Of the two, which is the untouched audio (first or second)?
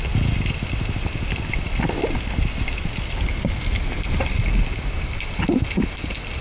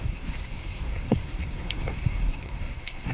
first